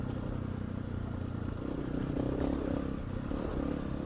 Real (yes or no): yes